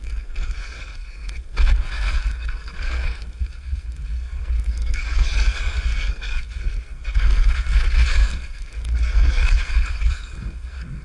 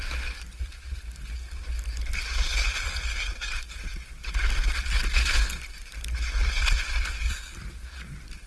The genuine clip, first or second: second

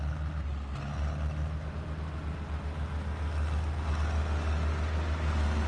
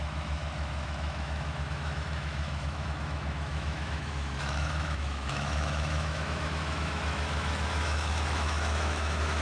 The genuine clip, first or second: first